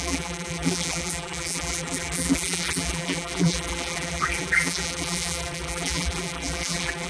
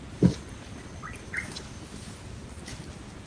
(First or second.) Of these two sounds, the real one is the second